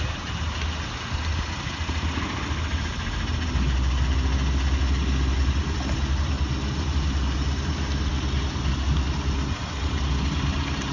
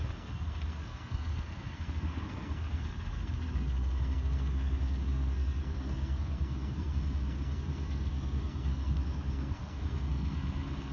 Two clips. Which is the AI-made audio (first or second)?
second